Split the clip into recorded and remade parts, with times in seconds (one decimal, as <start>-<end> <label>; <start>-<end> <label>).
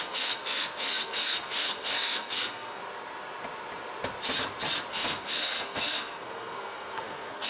0.0-2.8 remade; 2.8-4.9 recorded; 4.9-7.5 remade